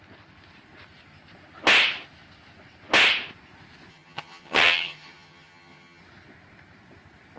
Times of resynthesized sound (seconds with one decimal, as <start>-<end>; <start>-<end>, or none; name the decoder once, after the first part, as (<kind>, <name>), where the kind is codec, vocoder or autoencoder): 3.9-6.0 (vocoder, HiFi-GAN)